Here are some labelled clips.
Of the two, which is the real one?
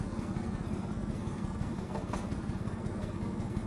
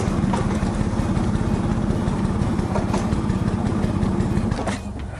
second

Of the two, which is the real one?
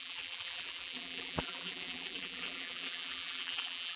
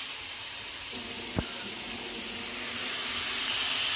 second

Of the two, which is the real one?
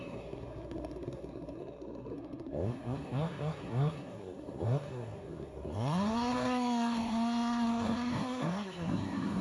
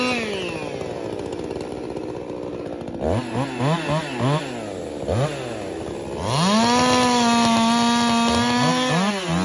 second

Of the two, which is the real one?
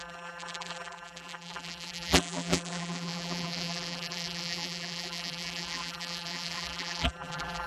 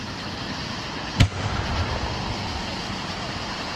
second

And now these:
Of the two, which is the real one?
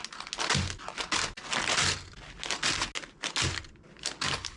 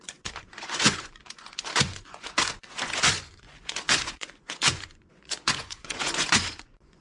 first